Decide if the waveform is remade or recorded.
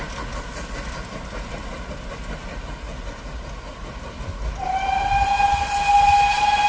recorded